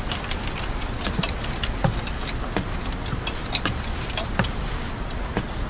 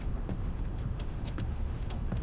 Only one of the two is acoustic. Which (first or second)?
first